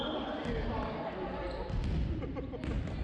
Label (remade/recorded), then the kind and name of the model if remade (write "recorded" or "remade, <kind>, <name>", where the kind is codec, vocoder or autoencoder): recorded